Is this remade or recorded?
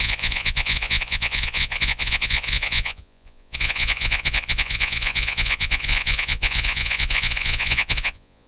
remade